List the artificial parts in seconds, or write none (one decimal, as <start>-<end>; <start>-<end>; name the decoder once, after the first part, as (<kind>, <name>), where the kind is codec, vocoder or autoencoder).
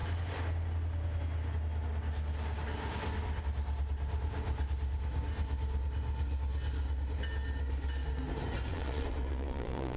8.7-10.0 (vocoder, Vocos)